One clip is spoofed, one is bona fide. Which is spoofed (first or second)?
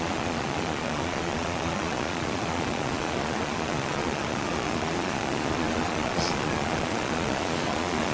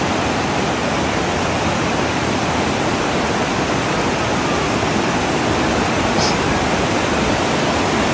first